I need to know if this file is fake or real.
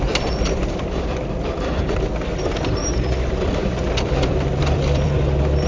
fake